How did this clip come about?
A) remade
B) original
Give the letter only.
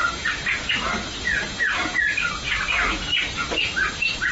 B